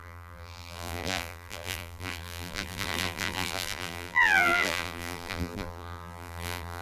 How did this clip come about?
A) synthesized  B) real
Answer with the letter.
A